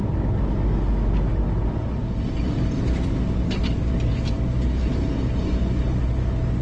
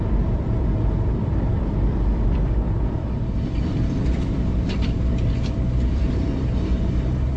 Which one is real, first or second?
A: first